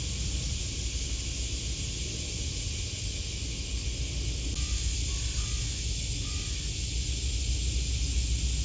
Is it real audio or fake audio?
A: real